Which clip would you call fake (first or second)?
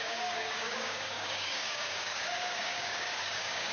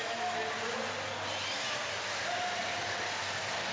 first